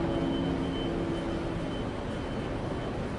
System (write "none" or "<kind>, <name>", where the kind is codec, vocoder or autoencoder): none